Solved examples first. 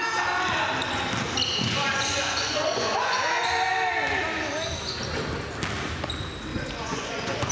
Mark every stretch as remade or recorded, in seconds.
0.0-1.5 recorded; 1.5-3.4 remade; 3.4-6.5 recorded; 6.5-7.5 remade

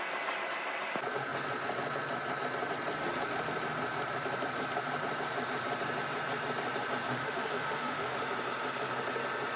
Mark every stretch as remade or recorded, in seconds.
0.0-7.1 recorded; 7.1-8.2 remade; 8.2-9.6 recorded